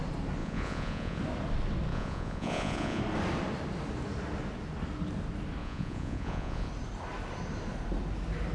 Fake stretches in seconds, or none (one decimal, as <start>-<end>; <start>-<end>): 0.4-1.2; 1.9-3.0; 5.6-6.7